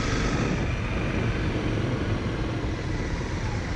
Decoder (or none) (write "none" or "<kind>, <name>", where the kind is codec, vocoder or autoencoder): none